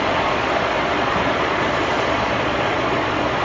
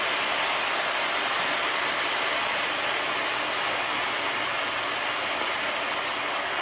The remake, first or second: first